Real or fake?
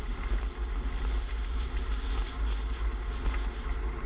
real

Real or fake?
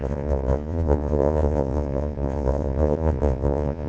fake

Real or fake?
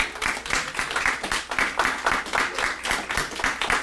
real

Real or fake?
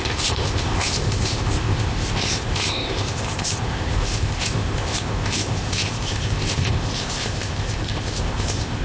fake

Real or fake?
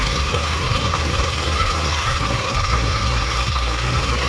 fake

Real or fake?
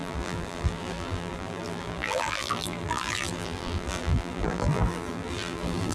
fake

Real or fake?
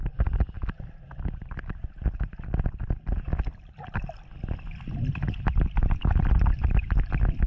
real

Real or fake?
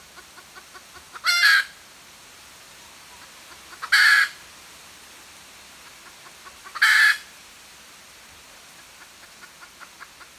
real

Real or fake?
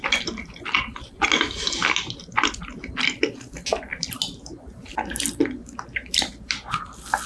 real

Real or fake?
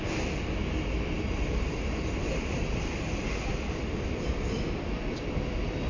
real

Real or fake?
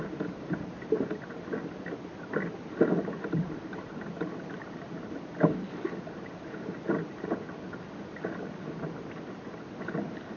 real